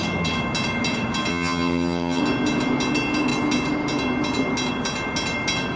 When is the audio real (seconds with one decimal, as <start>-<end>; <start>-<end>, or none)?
0.0-1.3; 2.2-5.8